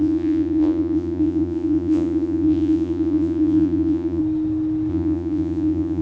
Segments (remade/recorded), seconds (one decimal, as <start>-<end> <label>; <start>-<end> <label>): 0.0-4.2 remade; 4.2-4.9 recorded; 4.9-6.0 remade